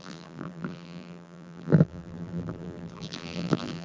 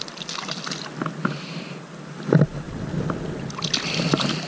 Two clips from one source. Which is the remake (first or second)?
first